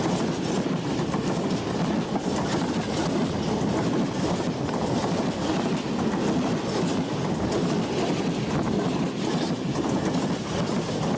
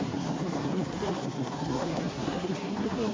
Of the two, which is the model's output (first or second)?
second